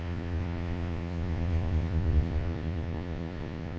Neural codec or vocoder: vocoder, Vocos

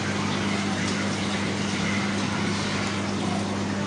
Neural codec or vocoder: none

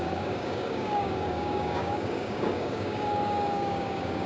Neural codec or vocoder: codec, DAC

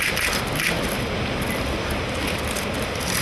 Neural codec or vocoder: none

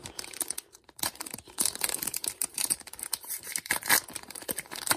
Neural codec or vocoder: vocoder, BigVGAN v2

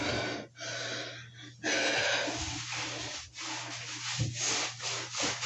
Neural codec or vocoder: none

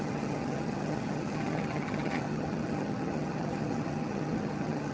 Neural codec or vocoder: vocoder, HiFi-GAN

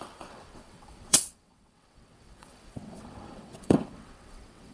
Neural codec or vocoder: vocoder, WaveNeXt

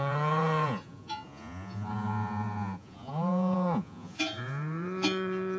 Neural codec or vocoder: vocoder, Vocos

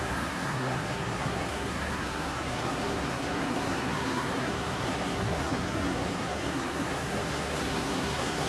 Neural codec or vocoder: codec, SNAC